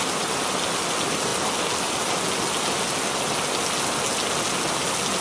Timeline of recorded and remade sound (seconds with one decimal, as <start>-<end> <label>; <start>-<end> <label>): 0.0-5.2 recorded